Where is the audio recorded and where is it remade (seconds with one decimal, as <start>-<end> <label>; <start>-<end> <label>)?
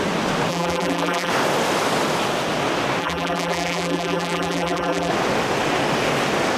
0.0-0.5 recorded; 0.5-1.3 remade; 1.3-3.0 recorded; 3.0-5.1 remade; 5.1-6.6 recorded